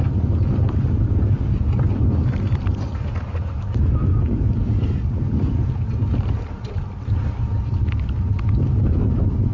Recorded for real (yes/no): yes